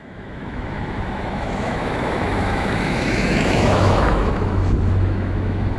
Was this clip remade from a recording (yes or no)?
yes